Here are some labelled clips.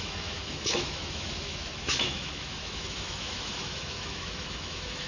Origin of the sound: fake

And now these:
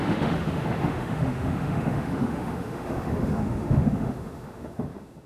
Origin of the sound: fake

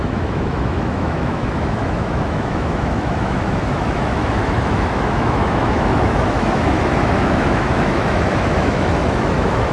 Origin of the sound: fake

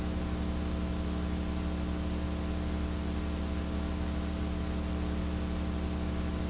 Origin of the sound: real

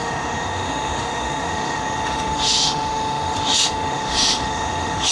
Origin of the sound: fake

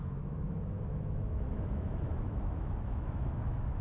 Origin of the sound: fake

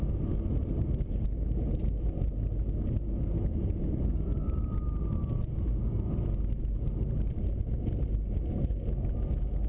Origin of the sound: real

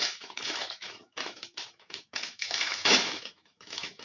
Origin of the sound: fake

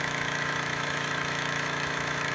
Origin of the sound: fake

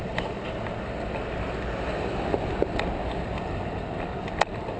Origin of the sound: real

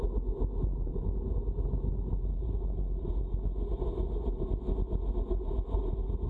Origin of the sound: real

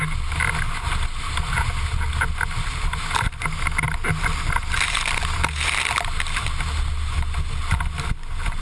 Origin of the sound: real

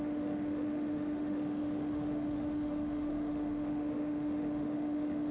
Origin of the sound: fake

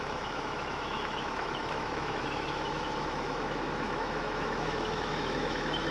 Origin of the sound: fake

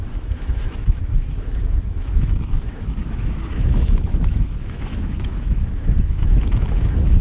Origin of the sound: fake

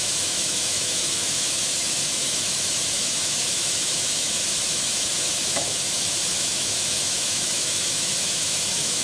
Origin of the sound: fake